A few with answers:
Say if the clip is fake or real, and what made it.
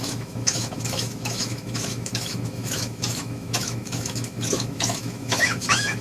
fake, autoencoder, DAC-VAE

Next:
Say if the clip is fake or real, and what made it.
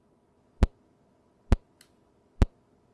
real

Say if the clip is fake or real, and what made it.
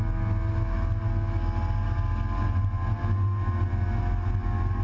real